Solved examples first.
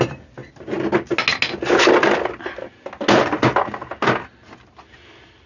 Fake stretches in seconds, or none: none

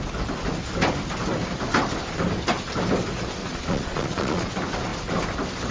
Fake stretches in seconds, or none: 3.4-4.5 (vocoder, Vocos)

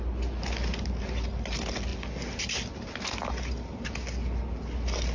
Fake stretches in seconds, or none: none

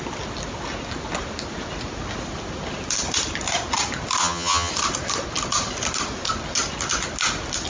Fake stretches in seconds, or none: 4.2-4.7 (vocoder, HiFi-GAN)

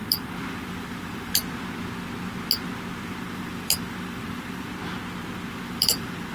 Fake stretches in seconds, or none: 0.0-1.4 (vocoder, BigVGAN v2); 3.0-4.7; 5.5-6.3

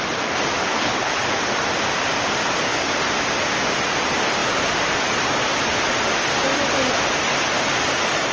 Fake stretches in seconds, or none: 0.6-1.2 (codec, HILCodec)

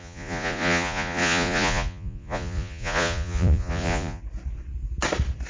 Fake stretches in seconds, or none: 0.0-4.2 (vocoder, Vocos)

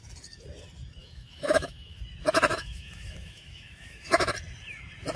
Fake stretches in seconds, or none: 1.0-2.0 (autoencoder, DAC-VAE); 2.5-4.3